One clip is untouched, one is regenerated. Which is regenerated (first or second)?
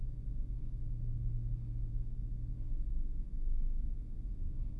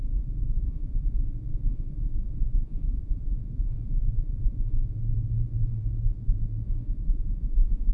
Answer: second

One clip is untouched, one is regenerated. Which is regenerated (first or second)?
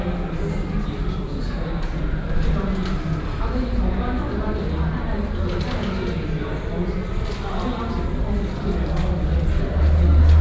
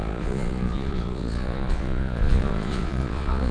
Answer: second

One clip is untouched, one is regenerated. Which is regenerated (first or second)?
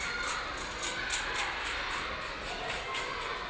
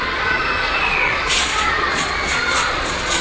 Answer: second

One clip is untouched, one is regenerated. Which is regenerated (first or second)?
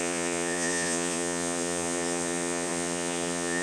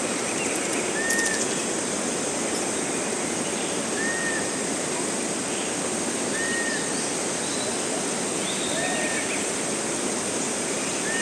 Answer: first